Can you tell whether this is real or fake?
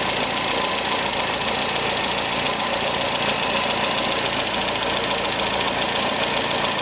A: real